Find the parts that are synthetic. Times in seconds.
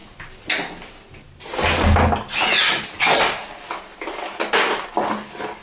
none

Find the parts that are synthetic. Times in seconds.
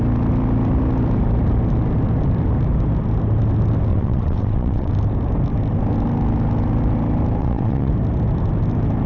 3.9-4.9 (vocoder, WaveNeXt); 7.4-7.9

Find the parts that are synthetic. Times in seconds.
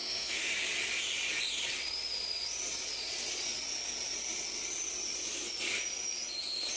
0.0-0.5 (autoencoder, DAC-VAE)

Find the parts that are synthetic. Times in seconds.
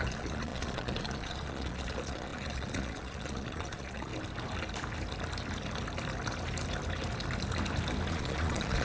0.0-4.1 (vocoder, Vocos); 8.1-8.8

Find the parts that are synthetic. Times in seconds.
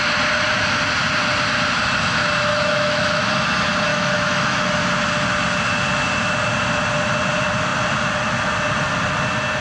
2.5-3.2 (autoencoder, DAC-VAE); 3.9-4.6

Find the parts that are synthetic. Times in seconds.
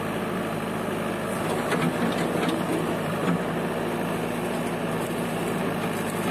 2.7-3.3 (vocoder, BigVGAN v2); 4.8-5.4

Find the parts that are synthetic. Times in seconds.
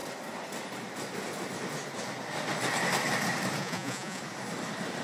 3.6-4.2 (vocoder, Vocos)